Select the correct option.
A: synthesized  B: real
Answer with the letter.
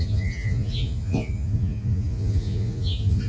A